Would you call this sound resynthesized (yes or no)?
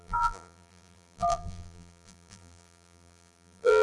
yes